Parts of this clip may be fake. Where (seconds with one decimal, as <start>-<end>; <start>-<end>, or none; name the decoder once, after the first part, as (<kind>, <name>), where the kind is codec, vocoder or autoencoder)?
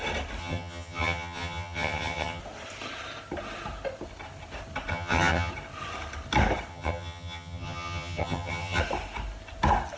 0.4-2.4 (vocoder, HiFi-GAN); 4.9-5.5; 6.7-8.8